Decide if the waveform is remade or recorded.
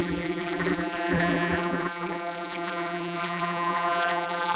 remade